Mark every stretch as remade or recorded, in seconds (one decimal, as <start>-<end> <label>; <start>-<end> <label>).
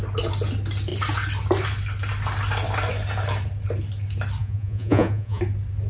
0.0-4.4 recorded; 4.4-5.4 remade; 5.4-5.9 recorded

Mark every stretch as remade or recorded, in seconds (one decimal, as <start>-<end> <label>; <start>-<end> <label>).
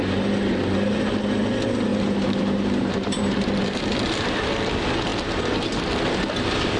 0.0-1.9 recorded; 1.9-4.3 remade; 4.3-6.8 recorded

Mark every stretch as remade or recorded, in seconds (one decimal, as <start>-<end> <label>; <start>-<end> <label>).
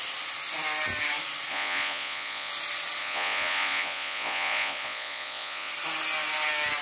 0.0-1.5 recorded; 1.5-2.5 remade; 2.5-3.0 recorded; 3.0-5.7 remade; 5.7-6.8 recorded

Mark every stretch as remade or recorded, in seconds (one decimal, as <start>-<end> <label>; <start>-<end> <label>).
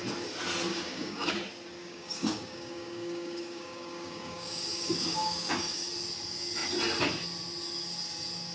0.0-0.7 recorded; 0.7-1.3 remade; 1.3-1.8 recorded; 1.8-5.9 remade; 5.9-8.5 recorded